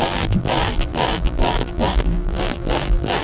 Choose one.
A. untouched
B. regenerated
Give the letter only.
B